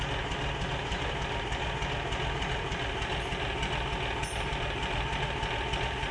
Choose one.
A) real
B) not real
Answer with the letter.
A